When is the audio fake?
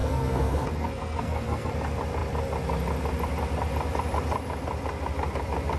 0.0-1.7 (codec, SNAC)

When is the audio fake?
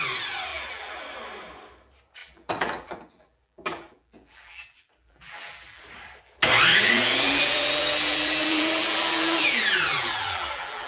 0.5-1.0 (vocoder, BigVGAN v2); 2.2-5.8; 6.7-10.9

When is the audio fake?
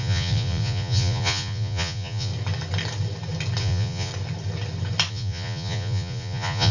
0.0-2.3 (vocoder, Vocos); 3.6-4.1; 5.1-6.7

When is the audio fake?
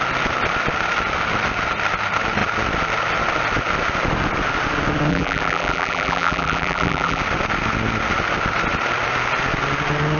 5.1-7.2 (vocoder, BigVGAN v2)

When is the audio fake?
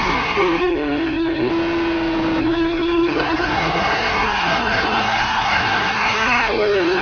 0.0-1.5 (codec, SNAC); 2.4-7.0